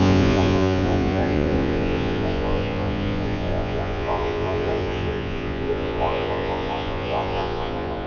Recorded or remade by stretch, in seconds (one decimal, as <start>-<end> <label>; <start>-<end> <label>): 0.0-8.1 remade